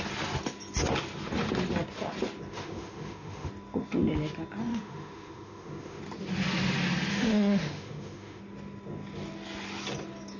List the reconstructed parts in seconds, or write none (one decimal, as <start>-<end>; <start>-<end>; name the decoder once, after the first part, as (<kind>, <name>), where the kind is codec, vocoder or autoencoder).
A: 2.5-3.5 (autoencoder, DAC-VAE); 4.7-6.0; 7.1-8.4